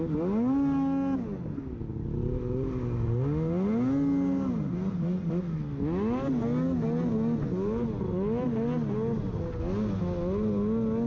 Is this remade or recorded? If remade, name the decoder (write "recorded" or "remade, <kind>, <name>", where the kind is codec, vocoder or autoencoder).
recorded